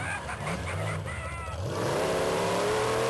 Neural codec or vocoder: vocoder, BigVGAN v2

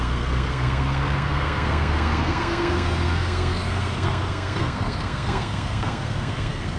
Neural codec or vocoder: codec, SNAC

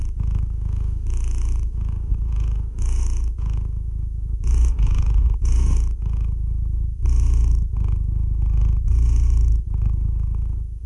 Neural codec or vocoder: autoencoder, DAC-VAE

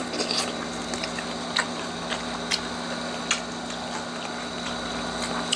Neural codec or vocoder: none